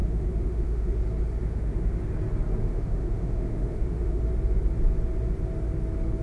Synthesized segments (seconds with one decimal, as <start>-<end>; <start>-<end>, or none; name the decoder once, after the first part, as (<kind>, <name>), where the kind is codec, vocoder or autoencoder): 0.0-1.0 (autoencoder, DAC-VAE); 1.4-2.0; 2.6-4.2

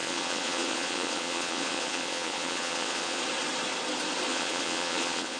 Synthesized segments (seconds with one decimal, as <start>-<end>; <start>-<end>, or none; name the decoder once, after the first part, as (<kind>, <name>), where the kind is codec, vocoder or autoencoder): 0.0-3.2 (vocoder, Vocos); 4.3-5.4

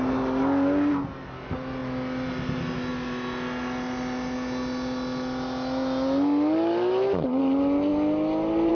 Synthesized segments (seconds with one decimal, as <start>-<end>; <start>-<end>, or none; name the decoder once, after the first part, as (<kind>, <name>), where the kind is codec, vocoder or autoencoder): none

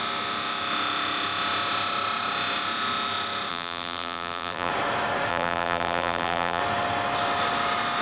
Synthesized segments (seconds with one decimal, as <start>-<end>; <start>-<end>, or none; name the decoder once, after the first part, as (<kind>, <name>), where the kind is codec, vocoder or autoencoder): 3.5-4.7 (vocoder, BigVGAN v2); 5.3-6.6

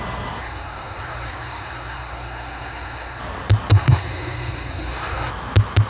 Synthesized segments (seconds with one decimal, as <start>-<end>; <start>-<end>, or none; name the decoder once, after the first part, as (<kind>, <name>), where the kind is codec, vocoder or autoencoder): 0.4-3.2 (codec, SNAC); 3.7-5.3

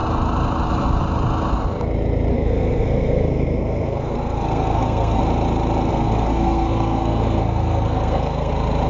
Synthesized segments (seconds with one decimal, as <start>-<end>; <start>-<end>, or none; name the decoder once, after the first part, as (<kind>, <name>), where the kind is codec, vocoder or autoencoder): 2.3-5.2 (codec, SNAC); 5.9-8.5

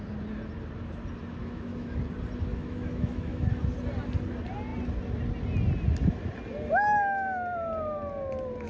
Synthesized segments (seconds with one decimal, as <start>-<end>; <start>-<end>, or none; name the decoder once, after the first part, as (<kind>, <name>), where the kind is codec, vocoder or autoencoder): 1.4-2.0 (autoencoder, DAC-VAE); 2.5-3.6

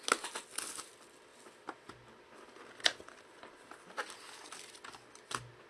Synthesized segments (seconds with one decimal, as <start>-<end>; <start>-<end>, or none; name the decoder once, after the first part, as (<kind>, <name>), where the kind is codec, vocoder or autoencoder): none